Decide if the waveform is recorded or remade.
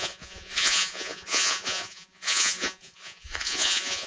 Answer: remade